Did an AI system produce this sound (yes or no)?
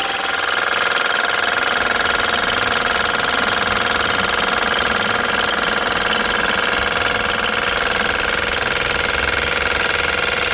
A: no